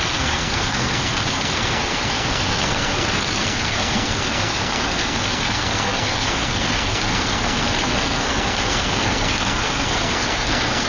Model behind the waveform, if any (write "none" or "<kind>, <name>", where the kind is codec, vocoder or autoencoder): codec, SNAC